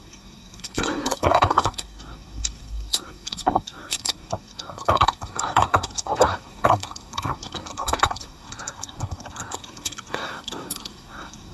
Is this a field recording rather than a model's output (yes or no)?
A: no